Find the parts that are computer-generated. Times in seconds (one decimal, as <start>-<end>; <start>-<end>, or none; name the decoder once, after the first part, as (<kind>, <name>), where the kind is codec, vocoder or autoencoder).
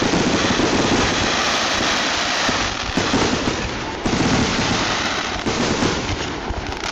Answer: 1.1-2.4 (vocoder, BigVGAN v2); 4.5-5.8